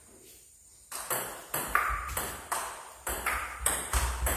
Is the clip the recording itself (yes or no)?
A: yes